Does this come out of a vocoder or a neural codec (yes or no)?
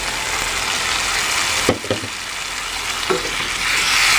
no